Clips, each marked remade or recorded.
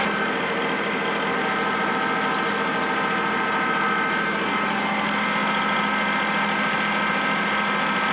recorded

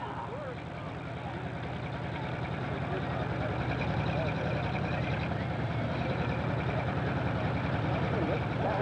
remade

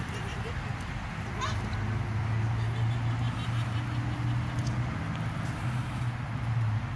recorded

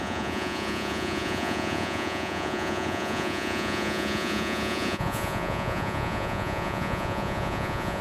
remade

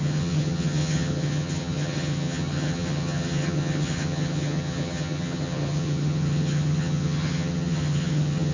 remade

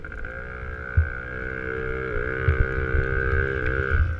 recorded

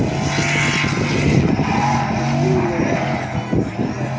recorded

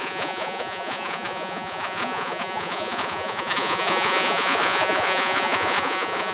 remade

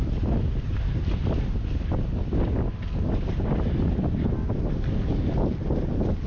recorded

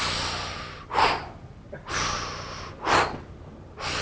recorded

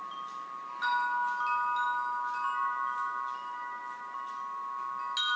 recorded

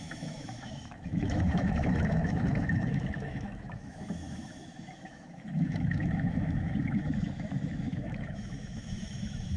remade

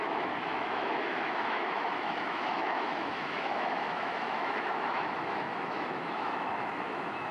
remade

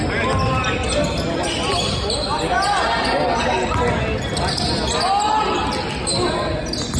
recorded